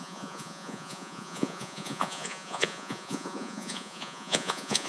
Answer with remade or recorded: remade